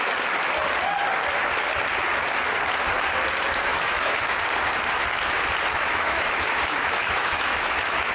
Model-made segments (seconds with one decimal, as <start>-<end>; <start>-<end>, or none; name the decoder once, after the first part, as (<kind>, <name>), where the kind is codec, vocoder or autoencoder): 3.7-4.3 (autoencoder, DAC-VAE); 5.7-8.1

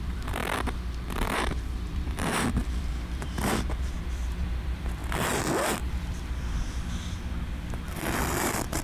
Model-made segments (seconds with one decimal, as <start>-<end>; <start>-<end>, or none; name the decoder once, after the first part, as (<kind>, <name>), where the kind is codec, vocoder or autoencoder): 0.0-0.4 (vocoder, BigVGAN v2); 1.9-8.8